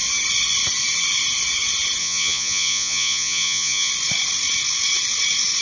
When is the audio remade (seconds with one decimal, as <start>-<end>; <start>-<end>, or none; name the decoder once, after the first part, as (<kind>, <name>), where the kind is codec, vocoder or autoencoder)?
2.0-3.9 (vocoder, Vocos)

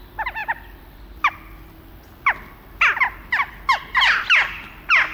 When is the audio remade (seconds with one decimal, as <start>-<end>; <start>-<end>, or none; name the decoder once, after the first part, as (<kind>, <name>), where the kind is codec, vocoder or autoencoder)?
none